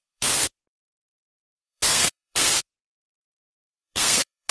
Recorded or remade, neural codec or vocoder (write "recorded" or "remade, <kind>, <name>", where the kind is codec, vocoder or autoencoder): remade, codec, SNAC